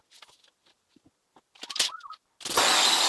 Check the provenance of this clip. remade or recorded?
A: recorded